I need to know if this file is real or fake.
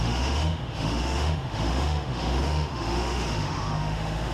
fake